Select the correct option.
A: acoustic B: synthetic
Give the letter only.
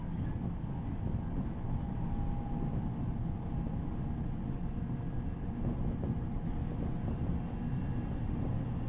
A